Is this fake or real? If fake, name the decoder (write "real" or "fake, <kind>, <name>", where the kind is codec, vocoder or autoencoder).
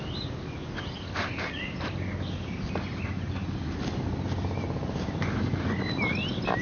real